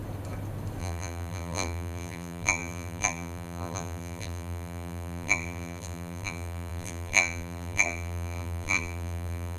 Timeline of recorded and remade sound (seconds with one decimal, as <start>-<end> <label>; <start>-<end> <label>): 0.0-0.8 recorded; 0.8-9.6 remade